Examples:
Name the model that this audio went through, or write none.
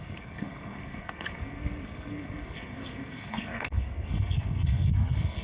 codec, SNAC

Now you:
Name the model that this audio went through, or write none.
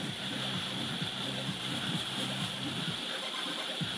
vocoder, BigVGAN v2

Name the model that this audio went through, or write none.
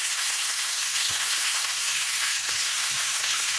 codec, SNAC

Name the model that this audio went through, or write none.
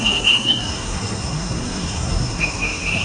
codec, SNAC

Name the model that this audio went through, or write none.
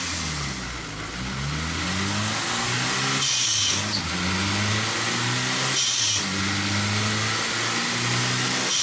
none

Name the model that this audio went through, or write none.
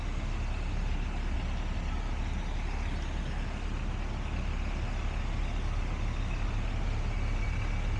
none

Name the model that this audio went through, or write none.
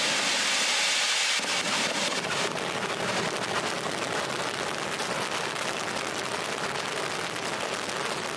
none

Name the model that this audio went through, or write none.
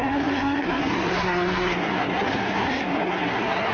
codec, SNAC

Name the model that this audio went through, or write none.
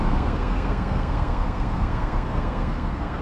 codec, SNAC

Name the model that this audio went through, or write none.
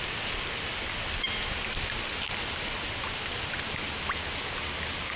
none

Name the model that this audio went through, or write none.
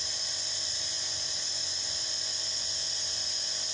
none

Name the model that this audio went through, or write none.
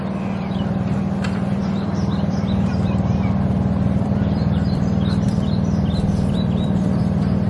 vocoder, BigVGAN v2